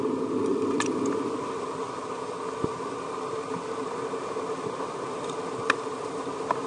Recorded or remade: recorded